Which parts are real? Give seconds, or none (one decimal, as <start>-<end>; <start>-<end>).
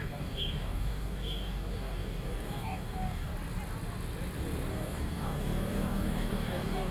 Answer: 3.3-4.7